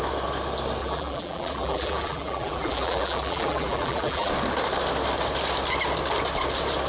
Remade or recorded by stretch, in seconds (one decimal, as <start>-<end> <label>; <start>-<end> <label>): 0.0-0.8 recorded; 0.8-4.3 remade; 4.3-6.9 recorded